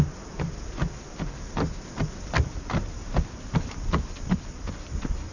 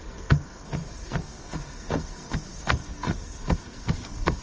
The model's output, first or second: second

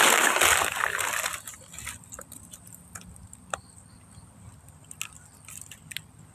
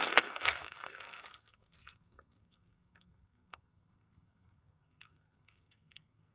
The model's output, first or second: second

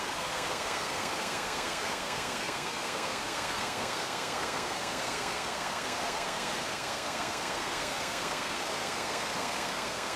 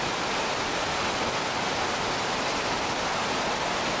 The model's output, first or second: first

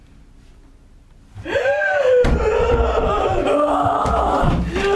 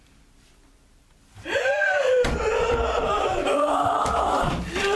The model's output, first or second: second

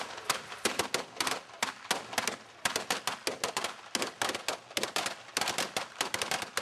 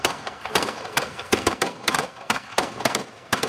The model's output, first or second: second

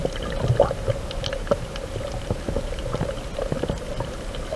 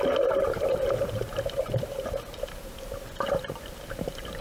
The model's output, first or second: second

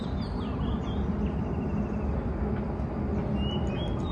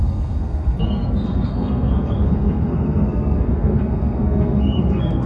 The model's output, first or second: second